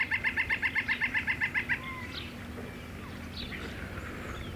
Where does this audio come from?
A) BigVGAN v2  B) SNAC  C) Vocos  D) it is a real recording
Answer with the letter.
D